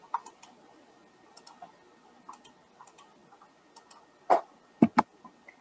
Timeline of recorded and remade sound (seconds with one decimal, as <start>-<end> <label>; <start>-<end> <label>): 0.0-5.6 recorded